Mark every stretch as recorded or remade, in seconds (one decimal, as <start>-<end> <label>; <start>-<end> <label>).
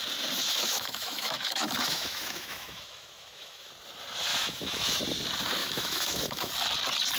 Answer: 0.0-0.4 recorded; 0.4-3.7 remade; 3.7-4.3 recorded; 4.3-5.0 remade; 5.0-5.6 recorded; 5.6-6.5 remade; 6.5-7.2 recorded